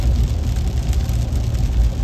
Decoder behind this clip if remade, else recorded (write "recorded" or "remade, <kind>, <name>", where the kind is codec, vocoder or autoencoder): recorded